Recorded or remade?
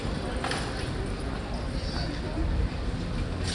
recorded